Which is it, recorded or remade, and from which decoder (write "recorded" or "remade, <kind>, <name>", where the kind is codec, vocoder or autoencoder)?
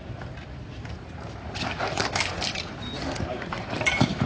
remade, vocoder, BigVGAN v2